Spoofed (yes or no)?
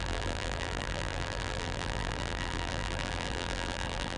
yes